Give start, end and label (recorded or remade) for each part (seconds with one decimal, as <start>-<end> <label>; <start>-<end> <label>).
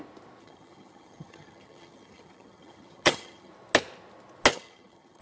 0.0-0.4 recorded; 0.4-3.5 remade; 3.5-4.5 recorded; 4.5-5.2 remade